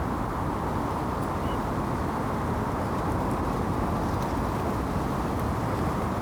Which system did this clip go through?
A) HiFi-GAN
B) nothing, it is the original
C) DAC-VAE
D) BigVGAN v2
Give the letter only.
B